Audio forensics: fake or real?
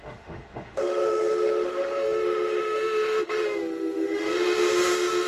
fake